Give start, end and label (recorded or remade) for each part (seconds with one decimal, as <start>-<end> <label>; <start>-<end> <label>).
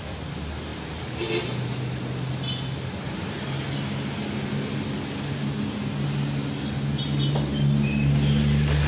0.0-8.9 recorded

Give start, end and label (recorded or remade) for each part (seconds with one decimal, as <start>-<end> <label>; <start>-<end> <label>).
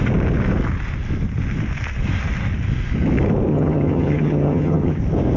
0.0-3.5 recorded; 3.5-5.0 remade; 5.0-5.4 recorded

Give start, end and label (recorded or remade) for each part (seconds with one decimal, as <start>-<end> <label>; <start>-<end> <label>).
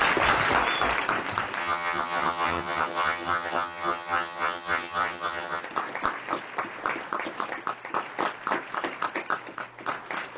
0.0-1.6 recorded; 1.6-5.6 remade; 5.6-10.4 recorded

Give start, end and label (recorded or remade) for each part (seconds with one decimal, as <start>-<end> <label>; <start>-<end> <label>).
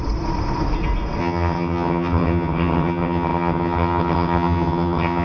0.0-1.2 recorded; 1.2-5.2 remade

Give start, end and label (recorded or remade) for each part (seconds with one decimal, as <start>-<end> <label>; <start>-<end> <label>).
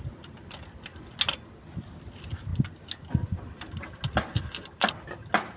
0.0-5.6 recorded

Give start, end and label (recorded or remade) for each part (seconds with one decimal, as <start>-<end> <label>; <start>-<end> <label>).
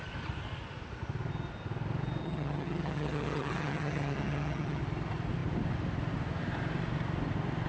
0.0-2.2 recorded; 2.2-4.8 remade; 4.8-7.7 recorded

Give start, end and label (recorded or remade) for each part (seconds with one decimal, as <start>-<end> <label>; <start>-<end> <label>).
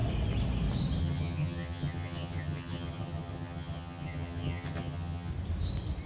0.0-1.0 recorded; 1.0-5.3 remade; 5.3-6.1 recorded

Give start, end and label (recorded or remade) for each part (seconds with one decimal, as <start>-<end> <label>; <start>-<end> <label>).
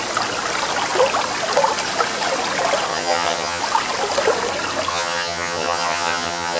0.0-2.9 recorded; 2.9-3.6 remade; 3.6-4.9 recorded; 4.9-6.6 remade